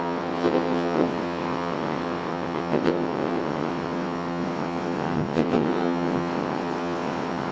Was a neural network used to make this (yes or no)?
yes